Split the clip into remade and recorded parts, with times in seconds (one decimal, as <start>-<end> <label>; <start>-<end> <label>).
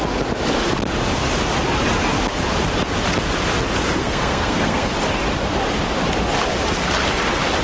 0.0-4.0 recorded; 4.0-4.9 remade; 4.9-7.6 recorded